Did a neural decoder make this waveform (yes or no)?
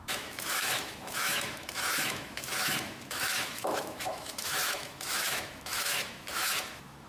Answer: yes